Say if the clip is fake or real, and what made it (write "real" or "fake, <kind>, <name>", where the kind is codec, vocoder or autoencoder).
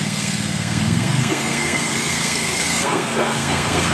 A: fake, codec, SNAC